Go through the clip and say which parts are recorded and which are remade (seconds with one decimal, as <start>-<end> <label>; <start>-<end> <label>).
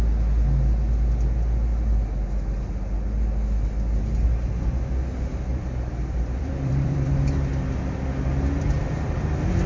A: 0.0-5.5 recorded; 5.5-7.1 remade; 7.1-9.7 recorded